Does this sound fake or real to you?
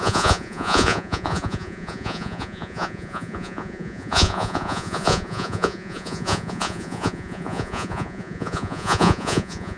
fake